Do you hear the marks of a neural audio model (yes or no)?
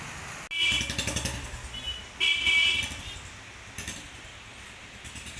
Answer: no